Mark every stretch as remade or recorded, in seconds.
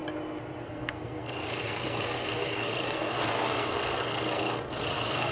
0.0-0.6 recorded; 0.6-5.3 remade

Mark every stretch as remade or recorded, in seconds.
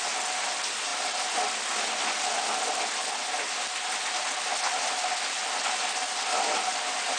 0.0-7.2 recorded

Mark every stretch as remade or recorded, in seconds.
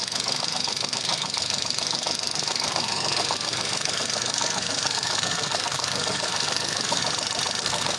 0.0-7.0 remade; 7.0-7.6 recorded; 7.6-8.0 remade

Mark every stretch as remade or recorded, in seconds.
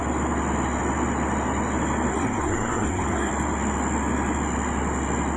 0.0-2.1 recorded; 2.1-3.3 remade; 3.3-5.4 recorded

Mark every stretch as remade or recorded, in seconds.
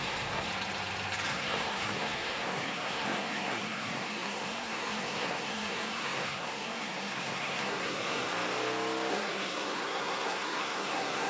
0.0-0.5 remade; 0.5-1.3 recorded; 1.3-8.3 remade; 8.3-9.1 recorded; 9.1-11.3 remade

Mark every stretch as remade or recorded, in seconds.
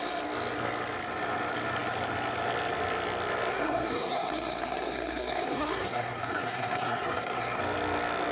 0.0-3.5 recorded; 3.5-7.6 remade; 7.6-8.3 recorded